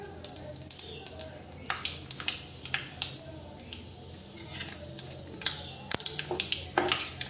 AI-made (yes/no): no